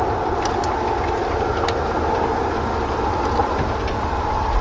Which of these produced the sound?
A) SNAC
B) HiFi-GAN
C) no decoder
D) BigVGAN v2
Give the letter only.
C